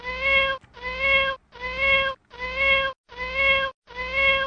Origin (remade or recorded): recorded